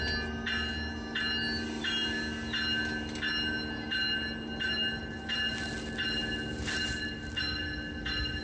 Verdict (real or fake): real